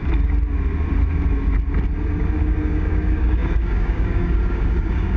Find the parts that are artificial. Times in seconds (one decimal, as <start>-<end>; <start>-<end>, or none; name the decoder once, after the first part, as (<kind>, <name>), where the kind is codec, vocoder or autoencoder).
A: 2.4-5.2 (codec, DAC)